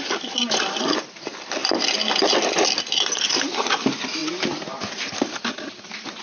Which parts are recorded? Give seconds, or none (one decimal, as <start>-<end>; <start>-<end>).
0.0-6.2